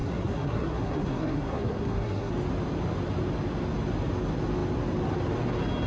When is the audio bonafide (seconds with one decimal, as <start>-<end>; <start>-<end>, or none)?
2.3-5.9